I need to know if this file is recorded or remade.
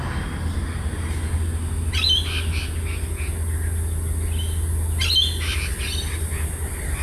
recorded